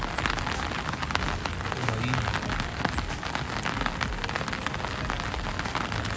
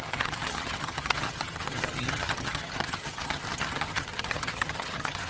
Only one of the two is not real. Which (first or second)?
second